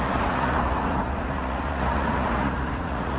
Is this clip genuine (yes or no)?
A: no